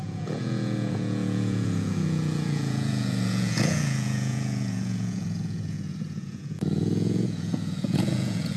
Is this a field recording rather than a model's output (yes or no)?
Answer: no